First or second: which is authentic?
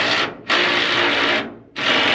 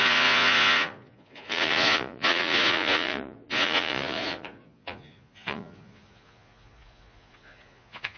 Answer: first